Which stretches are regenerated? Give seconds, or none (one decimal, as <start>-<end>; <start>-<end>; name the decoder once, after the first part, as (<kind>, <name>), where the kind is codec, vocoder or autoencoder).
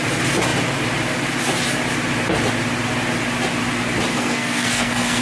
4.1-5.2 (codec, SNAC)